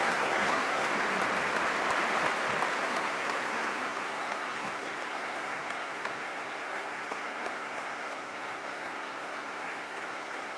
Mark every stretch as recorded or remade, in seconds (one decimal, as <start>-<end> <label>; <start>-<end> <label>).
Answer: 0.0-0.9 remade; 0.9-2.8 recorded; 2.8-10.6 remade